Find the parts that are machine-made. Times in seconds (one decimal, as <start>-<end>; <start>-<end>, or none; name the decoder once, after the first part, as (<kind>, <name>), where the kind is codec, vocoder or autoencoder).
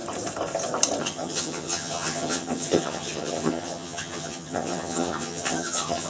1.0-6.1 (vocoder, HiFi-GAN)